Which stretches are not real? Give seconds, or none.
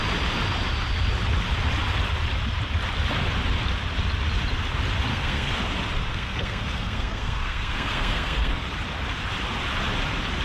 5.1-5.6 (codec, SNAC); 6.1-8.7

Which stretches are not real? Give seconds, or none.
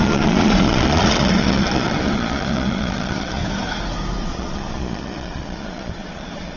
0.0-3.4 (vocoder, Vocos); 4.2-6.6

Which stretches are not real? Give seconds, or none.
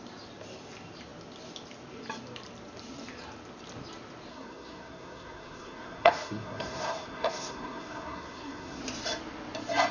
4.3-8.8 (codec, SNAC)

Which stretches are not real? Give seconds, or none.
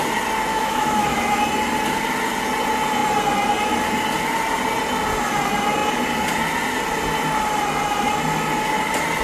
0.5-1.4 (autoencoder, DAC-VAE)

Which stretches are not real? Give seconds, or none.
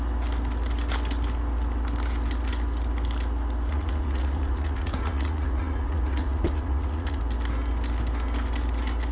3.7-7.2 (vocoder, Vocos)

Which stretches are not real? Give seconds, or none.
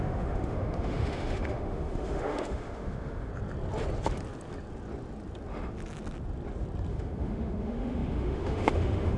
0.0-3.3 (autoencoder, DAC-VAE); 6.9-9.2